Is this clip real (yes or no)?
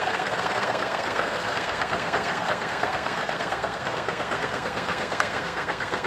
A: no